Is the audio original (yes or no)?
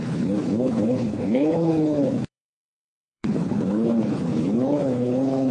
no